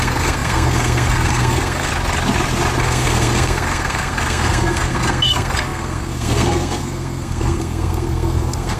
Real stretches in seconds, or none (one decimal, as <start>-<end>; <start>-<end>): 1.9-2.8